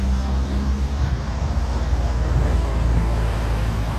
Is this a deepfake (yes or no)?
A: yes